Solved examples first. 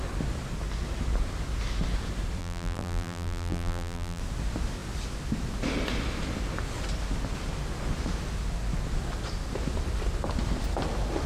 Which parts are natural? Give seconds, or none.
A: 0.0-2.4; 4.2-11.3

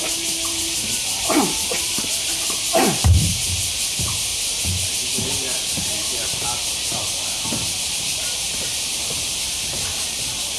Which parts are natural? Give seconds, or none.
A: 4.3-4.9

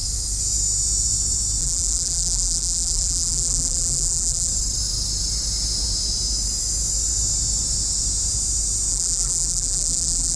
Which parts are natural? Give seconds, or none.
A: 0.0-1.6; 4.5-8.9

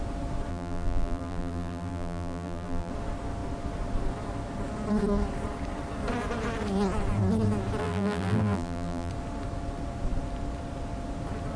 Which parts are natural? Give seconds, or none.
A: 0.0-0.5; 2.9-7.8; 9.1-11.6

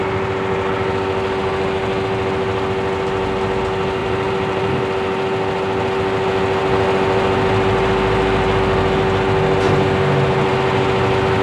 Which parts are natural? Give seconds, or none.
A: 0.0-4.0; 4.7-11.4

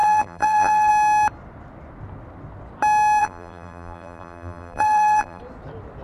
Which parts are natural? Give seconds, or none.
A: 0.9-3.2; 5.4-6.0

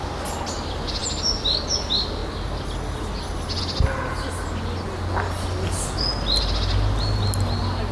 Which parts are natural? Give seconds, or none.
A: 0.0-7.9

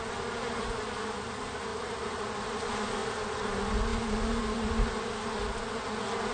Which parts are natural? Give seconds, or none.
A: 0.0-1.7; 2.2-6.3